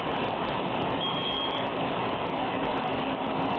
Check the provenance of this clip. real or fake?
fake